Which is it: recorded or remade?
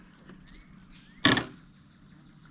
recorded